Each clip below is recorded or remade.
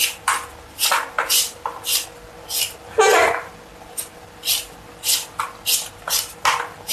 recorded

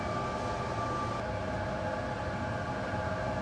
recorded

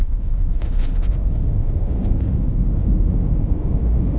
remade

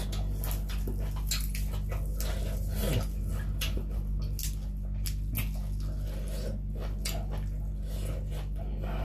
recorded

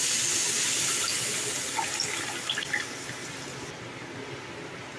recorded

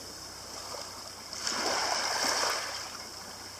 remade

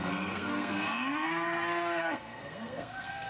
remade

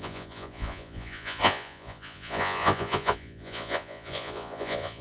remade